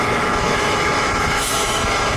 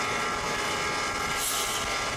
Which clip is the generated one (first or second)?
first